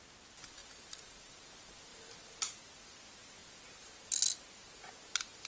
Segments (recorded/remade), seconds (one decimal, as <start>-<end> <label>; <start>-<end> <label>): 0.0-0.6 recorded; 0.6-1.3 remade; 1.3-1.9 recorded; 1.9-2.6 remade; 2.6-5.5 recorded